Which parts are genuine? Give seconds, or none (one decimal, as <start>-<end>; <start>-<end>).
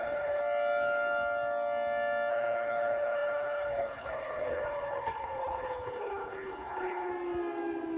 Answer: 0.4-2.3; 7.1-8.0